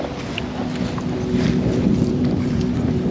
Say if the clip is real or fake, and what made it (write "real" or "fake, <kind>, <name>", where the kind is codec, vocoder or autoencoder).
real